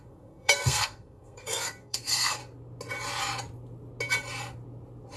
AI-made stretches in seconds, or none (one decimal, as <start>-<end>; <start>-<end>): 0.0-2.4